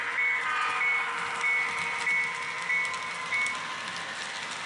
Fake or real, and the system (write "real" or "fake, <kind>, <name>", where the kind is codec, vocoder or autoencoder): real